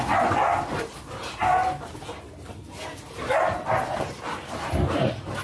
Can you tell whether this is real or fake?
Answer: real